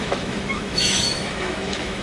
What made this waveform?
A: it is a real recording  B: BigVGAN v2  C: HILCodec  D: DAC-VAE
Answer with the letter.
D